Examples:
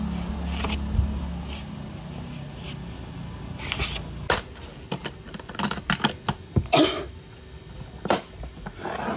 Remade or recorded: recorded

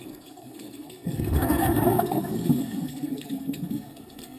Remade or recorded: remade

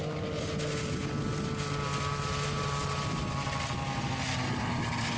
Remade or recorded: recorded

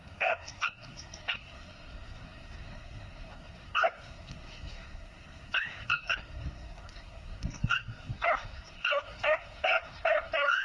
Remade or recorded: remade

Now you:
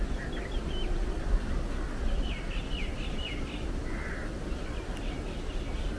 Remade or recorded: recorded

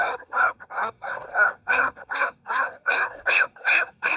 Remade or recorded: remade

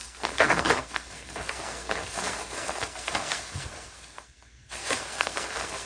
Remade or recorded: remade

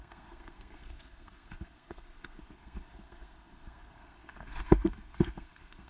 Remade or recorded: remade